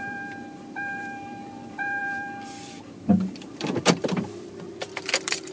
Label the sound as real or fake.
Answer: fake